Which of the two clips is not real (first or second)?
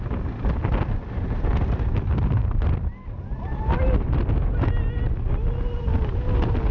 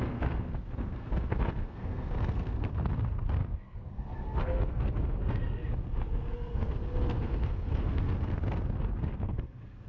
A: second